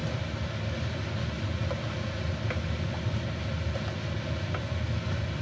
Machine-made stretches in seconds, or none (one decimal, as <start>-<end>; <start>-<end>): 0.0-0.6